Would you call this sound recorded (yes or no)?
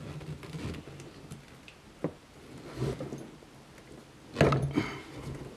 yes